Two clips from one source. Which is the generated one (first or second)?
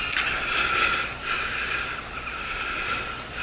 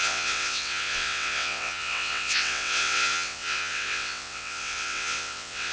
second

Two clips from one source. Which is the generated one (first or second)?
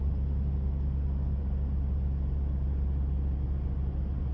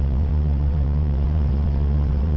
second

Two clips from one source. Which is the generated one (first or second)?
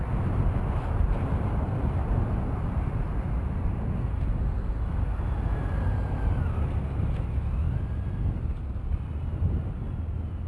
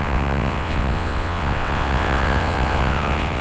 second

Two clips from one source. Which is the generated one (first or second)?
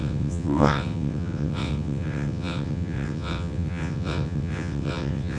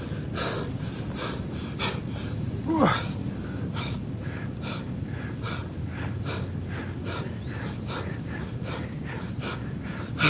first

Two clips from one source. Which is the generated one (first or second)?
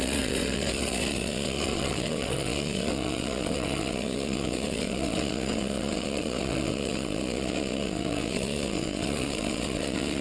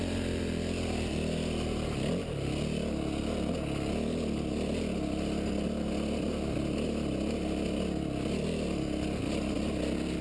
first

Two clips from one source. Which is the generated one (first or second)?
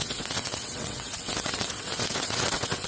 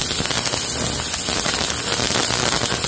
first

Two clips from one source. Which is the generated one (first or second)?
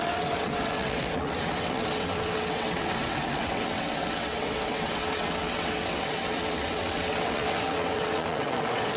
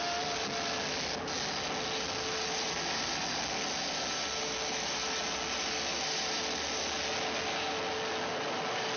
first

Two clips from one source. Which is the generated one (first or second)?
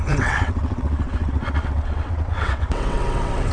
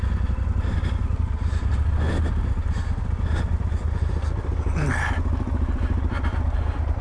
first